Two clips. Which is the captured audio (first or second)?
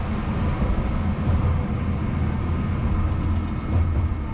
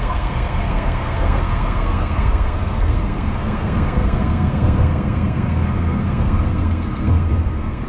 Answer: first